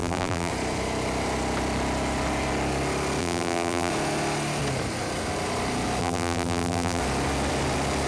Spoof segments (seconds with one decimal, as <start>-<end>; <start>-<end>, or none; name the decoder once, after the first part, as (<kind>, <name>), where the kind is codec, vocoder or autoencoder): 0.0-0.5 (vocoder, BigVGAN v2); 3.2-3.9; 6.0-7.0